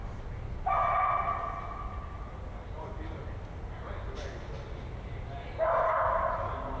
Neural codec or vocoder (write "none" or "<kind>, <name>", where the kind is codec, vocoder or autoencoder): none